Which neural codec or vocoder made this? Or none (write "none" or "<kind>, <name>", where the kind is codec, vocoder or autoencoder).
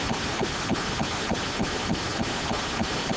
none